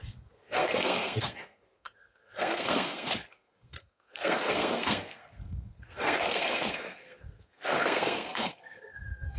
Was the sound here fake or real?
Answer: fake